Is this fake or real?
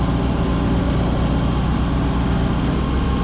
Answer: real